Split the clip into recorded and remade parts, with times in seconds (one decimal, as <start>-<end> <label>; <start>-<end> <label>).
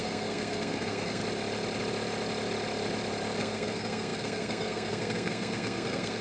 0.0-1.2 remade; 1.2-3.4 recorded; 3.4-6.2 remade